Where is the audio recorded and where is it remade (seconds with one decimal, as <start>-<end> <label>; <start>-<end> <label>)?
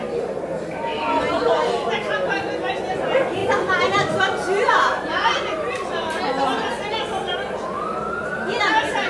0.0-9.1 recorded